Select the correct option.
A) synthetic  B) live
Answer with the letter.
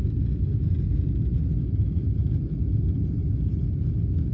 B